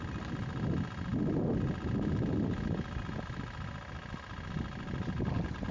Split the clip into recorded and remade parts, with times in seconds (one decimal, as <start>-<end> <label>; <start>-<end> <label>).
0.0-5.7 recorded